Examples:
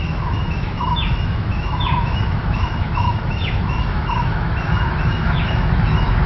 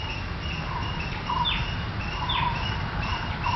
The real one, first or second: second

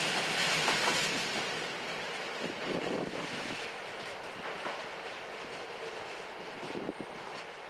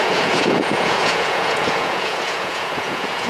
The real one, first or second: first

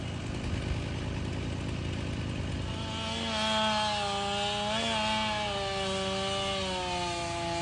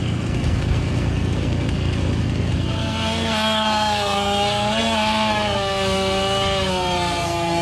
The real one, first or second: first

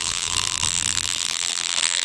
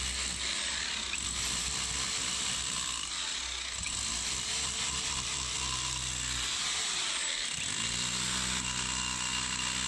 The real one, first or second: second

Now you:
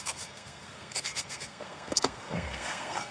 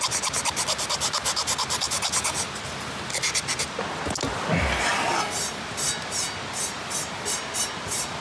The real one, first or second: second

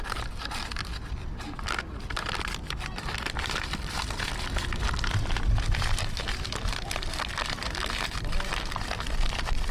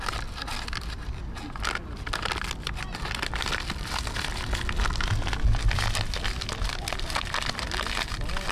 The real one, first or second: second